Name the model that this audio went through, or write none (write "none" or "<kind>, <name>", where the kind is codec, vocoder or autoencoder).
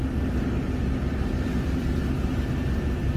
none